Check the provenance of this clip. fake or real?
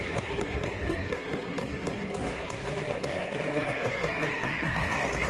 fake